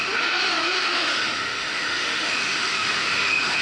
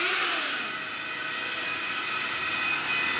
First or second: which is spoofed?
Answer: first